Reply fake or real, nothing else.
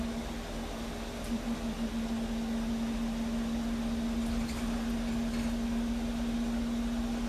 real